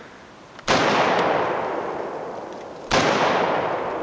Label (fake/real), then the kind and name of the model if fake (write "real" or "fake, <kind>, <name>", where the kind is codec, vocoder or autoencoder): real